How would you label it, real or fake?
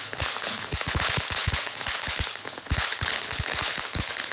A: fake